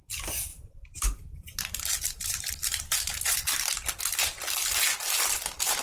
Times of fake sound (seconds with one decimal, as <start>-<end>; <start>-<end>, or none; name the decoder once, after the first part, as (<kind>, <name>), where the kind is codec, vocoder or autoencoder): 0.5-4.0 (vocoder, BigVGAN v2)